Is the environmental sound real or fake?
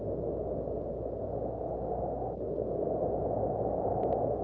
real